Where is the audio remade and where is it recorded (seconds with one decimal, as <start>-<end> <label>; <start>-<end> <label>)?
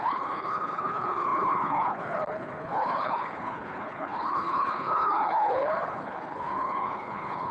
0.0-7.5 remade